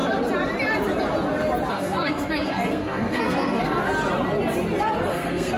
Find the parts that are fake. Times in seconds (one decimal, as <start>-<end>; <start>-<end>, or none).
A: 1.7-3.8; 5.1-5.6